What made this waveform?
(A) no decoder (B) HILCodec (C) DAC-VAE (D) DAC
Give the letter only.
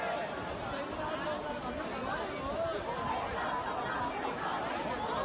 A